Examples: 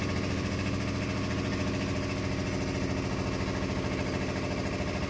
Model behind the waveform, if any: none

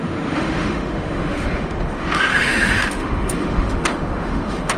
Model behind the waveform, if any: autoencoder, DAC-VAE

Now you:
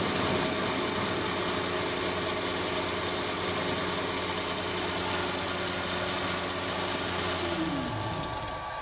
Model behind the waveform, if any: none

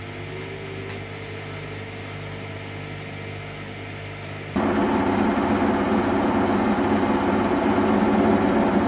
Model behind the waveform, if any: none